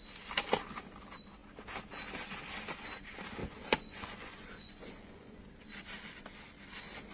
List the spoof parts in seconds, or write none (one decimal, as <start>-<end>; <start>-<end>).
3.4-5.4